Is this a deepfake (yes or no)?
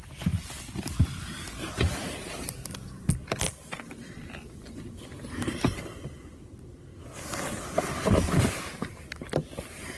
no